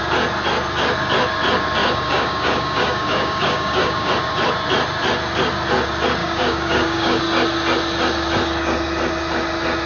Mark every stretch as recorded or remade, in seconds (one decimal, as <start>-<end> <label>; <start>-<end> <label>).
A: 0.0-1.8 recorded; 1.8-4.1 remade; 4.1-6.2 recorded; 6.2-7.2 remade; 7.2-9.9 recorded